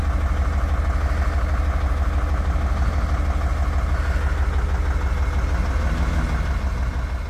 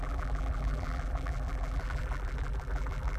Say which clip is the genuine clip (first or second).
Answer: first